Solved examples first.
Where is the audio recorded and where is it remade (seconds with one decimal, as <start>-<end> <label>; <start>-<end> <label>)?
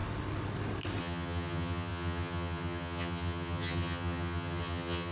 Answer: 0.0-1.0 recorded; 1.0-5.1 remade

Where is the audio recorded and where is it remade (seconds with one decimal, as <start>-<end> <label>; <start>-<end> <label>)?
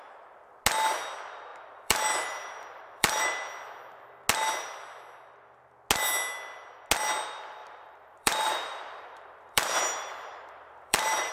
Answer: 0.0-1.5 recorded; 1.5-3.2 remade; 3.2-7.6 recorded; 7.6-11.3 remade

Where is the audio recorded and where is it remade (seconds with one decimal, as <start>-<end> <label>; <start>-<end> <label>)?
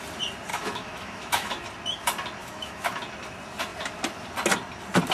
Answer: 0.0-0.5 recorded; 0.5-1.7 remade; 1.7-2.4 recorded; 2.4-3.0 remade; 3.0-5.1 recorded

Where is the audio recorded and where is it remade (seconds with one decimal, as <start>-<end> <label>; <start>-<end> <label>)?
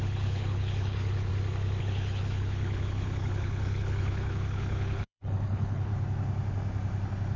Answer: 0.0-1.3 remade; 1.3-1.8 recorded; 1.8-5.9 remade; 5.9-7.4 recorded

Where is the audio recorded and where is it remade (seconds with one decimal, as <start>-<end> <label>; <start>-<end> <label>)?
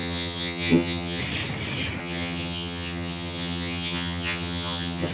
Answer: 0.0-1.2 remade; 1.2-2.0 recorded; 2.0-5.1 remade